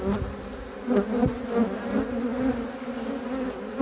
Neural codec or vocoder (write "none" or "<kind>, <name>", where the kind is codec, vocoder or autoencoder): none